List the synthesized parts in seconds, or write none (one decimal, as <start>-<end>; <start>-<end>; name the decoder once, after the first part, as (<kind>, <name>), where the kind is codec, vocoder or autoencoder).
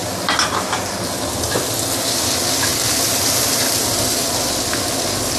none